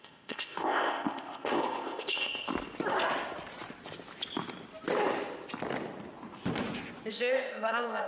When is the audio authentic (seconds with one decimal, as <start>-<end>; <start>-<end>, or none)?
2.5-7.1

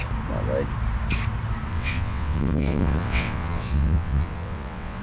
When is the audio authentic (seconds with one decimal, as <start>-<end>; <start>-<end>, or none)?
0.0-1.7

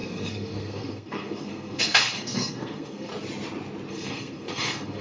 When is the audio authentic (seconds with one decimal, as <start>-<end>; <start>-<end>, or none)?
3.1-3.9

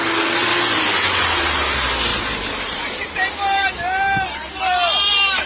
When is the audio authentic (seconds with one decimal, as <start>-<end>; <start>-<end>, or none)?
0.0-2.1; 4.6-5.5

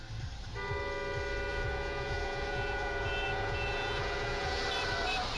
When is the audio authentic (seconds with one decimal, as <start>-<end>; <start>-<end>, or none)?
0.0-1.5; 4.6-5.4

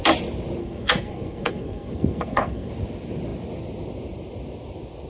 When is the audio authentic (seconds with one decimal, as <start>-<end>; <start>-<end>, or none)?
0.0-0.6; 2.7-5.1

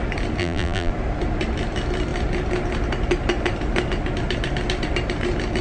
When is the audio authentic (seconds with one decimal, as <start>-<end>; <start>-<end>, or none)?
0.0-0.4; 0.9-5.6

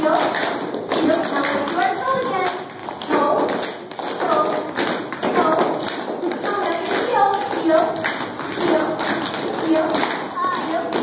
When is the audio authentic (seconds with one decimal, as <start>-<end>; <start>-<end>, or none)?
0.0-11.0